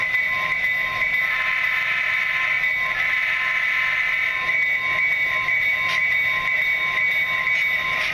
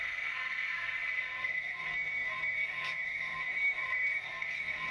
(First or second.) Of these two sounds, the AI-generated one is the second